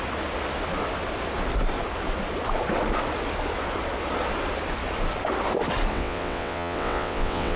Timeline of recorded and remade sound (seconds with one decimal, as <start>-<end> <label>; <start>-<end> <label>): 0.0-5.9 recorded; 5.9-7.6 remade